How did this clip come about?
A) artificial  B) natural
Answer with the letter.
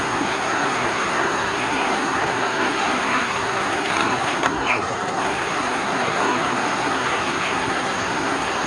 A